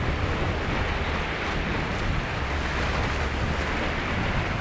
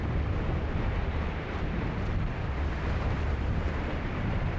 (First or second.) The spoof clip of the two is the second